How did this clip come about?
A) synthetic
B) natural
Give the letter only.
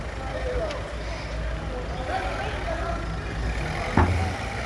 B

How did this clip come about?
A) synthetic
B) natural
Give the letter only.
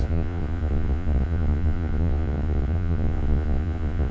A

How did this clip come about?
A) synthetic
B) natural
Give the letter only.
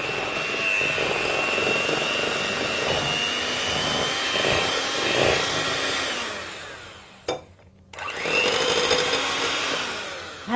B